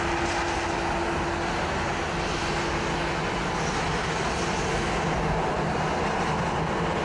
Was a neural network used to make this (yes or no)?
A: no